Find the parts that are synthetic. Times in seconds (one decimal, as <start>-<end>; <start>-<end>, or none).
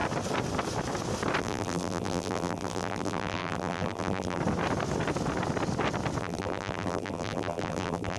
1.4-4.4; 6.2-8.2